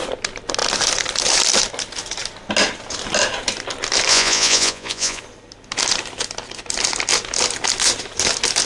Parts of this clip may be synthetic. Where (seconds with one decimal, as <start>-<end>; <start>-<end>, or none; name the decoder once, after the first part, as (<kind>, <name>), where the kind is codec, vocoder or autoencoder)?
4.1-5.2 (vocoder, Vocos)